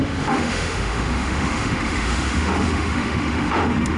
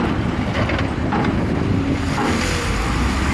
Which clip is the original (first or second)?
second